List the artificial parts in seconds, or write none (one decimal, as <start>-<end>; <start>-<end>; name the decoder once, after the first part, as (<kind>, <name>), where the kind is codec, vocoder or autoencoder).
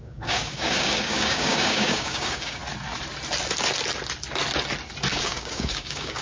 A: 0.0-2.6 (codec, DAC); 5.1-6.2